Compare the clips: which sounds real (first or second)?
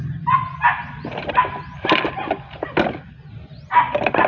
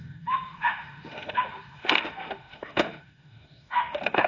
first